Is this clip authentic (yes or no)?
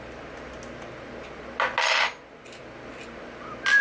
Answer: yes